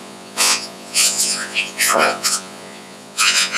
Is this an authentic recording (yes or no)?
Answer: no